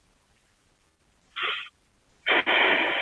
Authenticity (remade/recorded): recorded